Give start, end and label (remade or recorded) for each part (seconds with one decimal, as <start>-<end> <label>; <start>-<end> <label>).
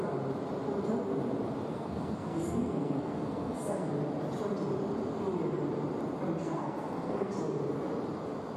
0.0-1.7 recorded; 1.7-3.9 remade; 3.9-6.4 recorded; 6.4-7.3 remade; 7.3-8.6 recorded